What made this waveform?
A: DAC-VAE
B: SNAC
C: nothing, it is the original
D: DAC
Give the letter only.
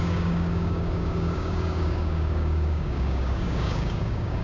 D